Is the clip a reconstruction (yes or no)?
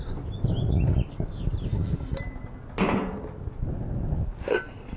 no